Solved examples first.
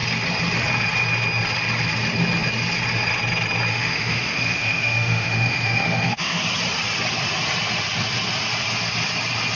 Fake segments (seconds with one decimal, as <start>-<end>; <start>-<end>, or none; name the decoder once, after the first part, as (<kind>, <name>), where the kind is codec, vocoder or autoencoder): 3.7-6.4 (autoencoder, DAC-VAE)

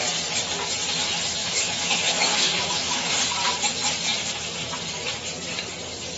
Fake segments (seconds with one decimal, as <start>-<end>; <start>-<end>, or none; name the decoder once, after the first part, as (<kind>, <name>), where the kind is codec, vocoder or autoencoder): 1.4-3.1 (autoencoder, DAC-VAE)

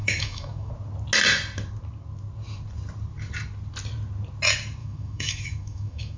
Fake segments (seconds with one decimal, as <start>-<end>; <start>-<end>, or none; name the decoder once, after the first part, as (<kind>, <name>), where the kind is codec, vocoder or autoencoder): 0.0-0.7 (autoencoder, DAC-VAE); 4.8-6.2

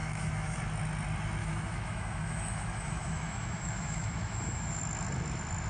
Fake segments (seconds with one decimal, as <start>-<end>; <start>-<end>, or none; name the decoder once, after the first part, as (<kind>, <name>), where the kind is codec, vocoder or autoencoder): 0.0-0.6 (autoencoder, DAC-VAE); 1.4-4.8